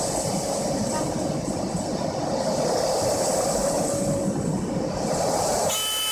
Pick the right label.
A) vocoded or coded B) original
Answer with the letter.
B